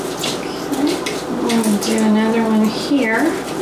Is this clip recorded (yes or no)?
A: yes